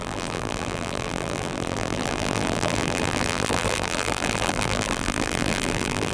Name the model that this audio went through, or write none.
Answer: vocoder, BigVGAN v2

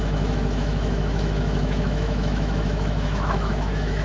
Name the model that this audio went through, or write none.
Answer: autoencoder, DAC-VAE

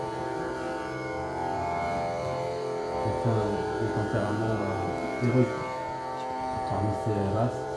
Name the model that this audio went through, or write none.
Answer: vocoder, BigVGAN v2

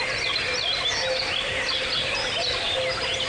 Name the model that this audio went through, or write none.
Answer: none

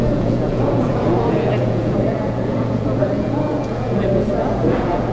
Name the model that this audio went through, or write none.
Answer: vocoder, Vocos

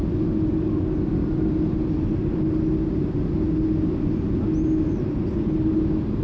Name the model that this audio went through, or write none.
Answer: none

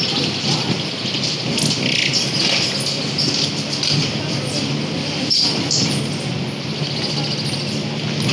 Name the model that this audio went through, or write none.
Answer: none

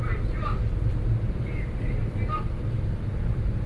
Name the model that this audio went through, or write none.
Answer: none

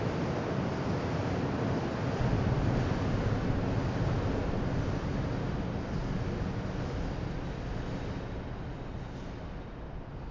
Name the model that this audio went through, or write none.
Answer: none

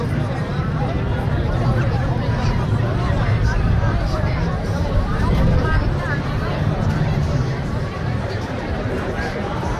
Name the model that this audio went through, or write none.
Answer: vocoder, BigVGAN v2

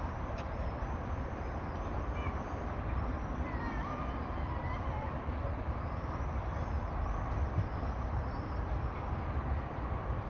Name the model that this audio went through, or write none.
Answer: vocoder, BigVGAN v2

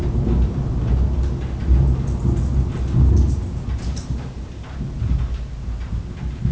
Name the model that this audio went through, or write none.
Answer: none